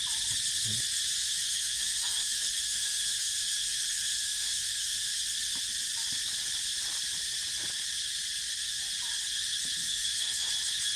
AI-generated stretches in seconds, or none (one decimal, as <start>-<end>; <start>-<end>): 1.2-5.2; 9.8-10.5